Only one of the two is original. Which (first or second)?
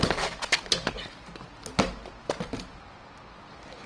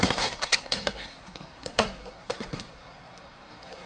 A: first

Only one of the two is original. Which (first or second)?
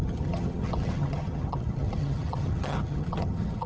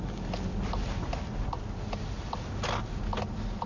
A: second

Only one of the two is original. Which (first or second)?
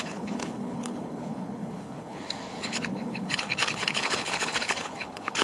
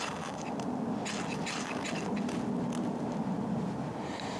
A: second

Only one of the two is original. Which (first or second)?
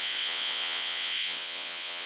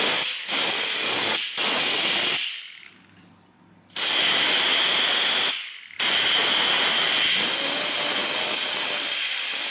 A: second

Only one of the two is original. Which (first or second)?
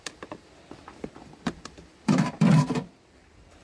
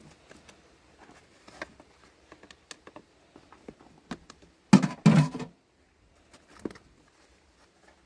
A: second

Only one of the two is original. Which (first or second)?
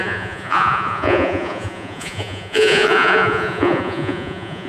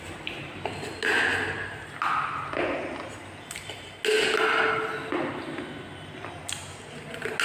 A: second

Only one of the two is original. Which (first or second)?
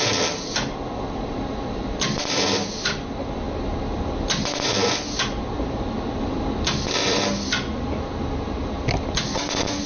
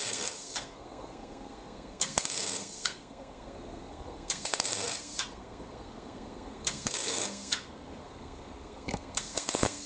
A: first